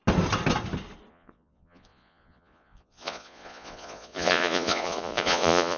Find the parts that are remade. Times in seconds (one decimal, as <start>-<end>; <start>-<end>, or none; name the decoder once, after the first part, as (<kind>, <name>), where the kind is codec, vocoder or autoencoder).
1.1-5.8 (vocoder, Vocos)